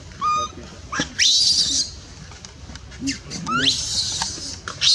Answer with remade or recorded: recorded